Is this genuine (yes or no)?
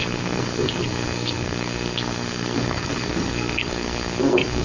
no